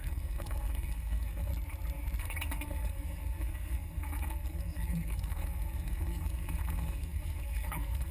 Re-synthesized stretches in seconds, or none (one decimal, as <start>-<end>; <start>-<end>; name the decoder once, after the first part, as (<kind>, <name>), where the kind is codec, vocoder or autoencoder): 0.0-1.5 (codec, SNAC); 2.2-8.1